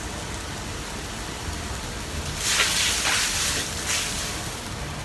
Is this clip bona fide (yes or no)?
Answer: yes